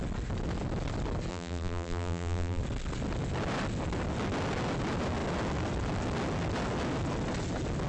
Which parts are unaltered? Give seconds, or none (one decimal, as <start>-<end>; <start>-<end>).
0.0-1.3; 2.6-7.9

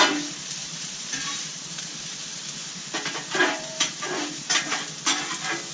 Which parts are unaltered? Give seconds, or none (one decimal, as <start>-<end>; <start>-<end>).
0.0-0.6; 1.8-3.4; 4.8-5.7

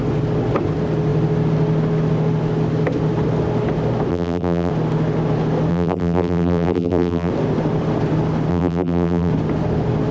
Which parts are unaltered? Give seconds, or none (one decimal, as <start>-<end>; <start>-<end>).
0.0-4.1; 4.7-5.7; 7.3-8.5; 9.3-10.1

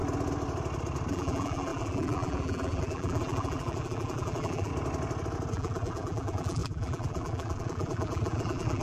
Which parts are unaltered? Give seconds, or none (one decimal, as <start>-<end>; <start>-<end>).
0.0-1.1; 4.7-5.5

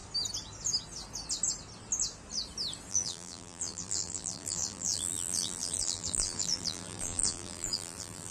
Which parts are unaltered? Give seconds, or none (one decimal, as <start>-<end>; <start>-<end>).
0.0-2.9

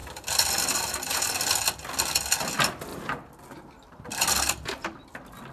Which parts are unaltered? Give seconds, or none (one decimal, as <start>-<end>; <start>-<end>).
0.5-2.9; 4.2-5.5

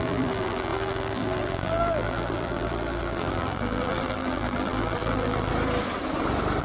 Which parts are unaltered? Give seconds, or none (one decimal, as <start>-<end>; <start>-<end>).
5.5-6.6